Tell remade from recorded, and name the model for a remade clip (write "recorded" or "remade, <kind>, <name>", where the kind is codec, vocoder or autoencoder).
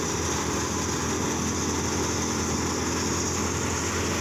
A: recorded